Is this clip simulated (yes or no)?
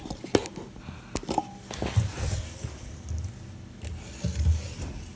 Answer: no